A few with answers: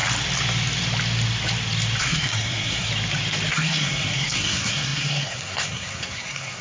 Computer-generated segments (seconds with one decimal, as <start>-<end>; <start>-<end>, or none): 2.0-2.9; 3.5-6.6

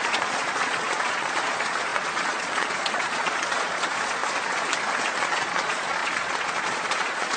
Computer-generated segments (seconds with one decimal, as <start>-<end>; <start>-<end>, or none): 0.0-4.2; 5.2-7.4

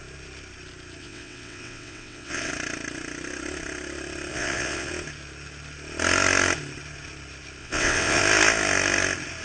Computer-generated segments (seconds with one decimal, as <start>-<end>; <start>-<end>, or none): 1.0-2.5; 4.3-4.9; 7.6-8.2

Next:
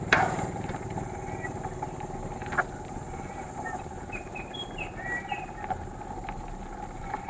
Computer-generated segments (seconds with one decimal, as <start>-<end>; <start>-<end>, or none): 0.0-0.9; 3.3-4.3

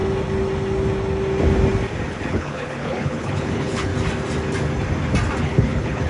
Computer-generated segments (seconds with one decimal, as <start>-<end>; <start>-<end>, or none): 2.1-3.9; 5.4-6.1

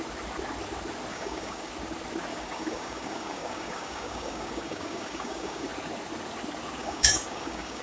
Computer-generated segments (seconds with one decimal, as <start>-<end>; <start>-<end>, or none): 1.1-1.7; 2.3-5.7; 6.8-7.8

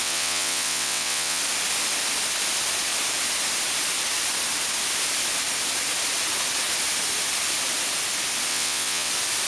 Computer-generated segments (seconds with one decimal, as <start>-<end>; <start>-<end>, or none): 0.0-1.4; 8.5-9.1

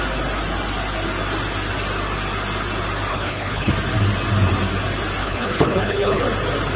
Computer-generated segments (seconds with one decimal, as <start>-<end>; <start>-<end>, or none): 3.1-3.7; 5.2-6.2